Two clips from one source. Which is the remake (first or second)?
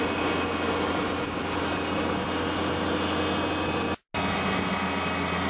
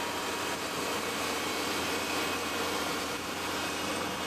second